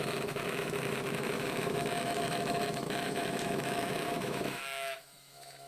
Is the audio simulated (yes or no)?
yes